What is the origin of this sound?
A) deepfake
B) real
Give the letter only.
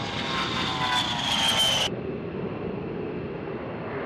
B